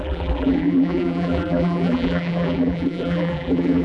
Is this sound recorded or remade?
remade